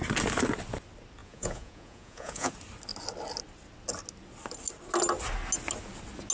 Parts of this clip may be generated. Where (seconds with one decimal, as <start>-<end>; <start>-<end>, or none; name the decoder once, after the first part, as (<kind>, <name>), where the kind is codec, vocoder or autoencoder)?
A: 1.2-2.5 (vocoder, Vocos)